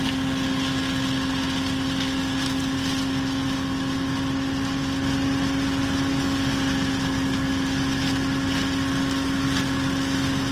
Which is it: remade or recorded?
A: recorded